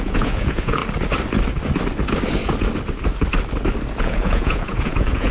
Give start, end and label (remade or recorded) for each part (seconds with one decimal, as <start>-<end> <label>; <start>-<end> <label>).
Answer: 0.0-0.8 remade; 0.8-4.0 recorded; 4.0-5.3 remade